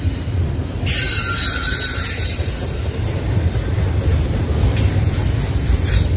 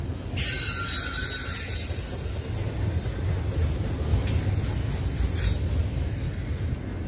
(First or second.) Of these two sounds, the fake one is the first